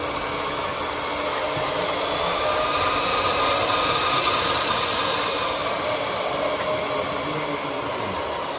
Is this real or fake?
real